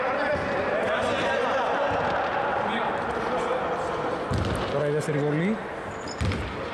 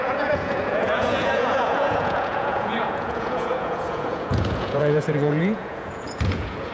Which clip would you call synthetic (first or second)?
second